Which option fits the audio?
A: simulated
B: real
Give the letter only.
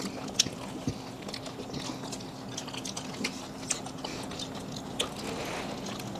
B